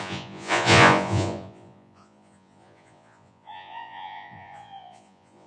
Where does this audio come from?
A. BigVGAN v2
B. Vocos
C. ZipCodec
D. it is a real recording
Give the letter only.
B